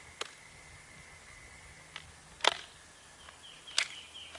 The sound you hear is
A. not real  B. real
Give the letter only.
B